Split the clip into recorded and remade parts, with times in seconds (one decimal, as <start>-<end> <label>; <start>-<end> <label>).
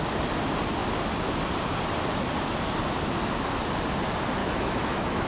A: 0.0-4.4 recorded; 4.4-5.3 remade